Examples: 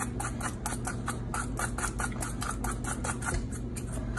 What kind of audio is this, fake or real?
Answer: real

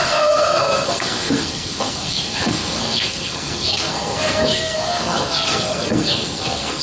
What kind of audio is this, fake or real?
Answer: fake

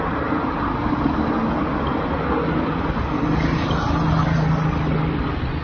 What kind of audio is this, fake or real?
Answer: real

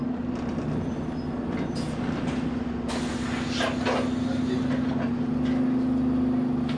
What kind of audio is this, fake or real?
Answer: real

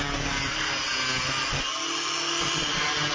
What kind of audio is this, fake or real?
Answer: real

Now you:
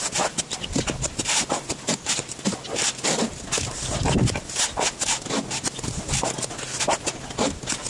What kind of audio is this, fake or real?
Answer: real